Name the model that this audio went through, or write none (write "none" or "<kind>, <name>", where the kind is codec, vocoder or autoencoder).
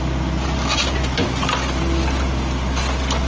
none